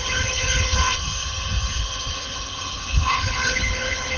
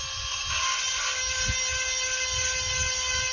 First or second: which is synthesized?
first